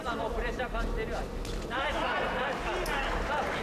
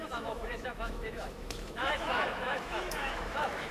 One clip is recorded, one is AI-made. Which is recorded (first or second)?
first